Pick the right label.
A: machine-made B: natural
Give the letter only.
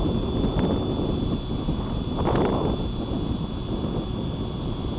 B